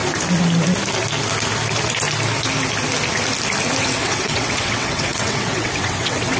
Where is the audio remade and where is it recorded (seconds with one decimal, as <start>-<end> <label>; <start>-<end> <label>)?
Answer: 0.0-3.8 recorded; 3.8-6.4 remade